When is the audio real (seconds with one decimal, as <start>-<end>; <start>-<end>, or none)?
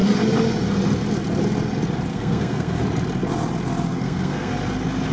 0.0-2.1; 2.8-3.9; 4.5-5.1